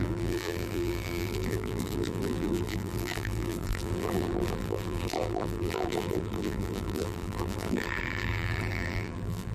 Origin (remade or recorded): remade